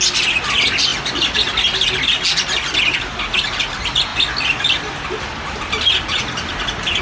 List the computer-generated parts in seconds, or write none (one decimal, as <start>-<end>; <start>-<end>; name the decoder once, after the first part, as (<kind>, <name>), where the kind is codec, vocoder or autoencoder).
none